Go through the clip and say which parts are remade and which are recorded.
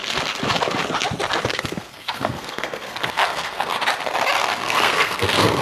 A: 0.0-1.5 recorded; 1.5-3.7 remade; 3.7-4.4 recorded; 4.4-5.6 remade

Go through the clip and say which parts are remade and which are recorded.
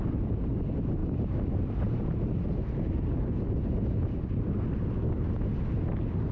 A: 0.0-1.0 recorded; 1.0-4.2 remade; 4.2-6.3 recorded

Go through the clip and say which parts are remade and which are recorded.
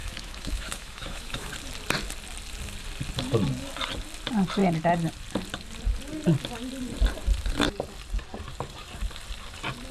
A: 0.0-1.5 remade; 1.5-9.9 recorded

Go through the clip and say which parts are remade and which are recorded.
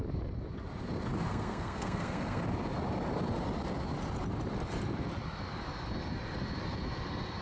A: 0.0-1.3 recorded; 1.3-2.4 remade; 2.4-7.4 recorded